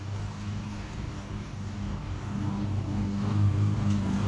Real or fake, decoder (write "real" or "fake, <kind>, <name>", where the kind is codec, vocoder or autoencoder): fake, codec, DAC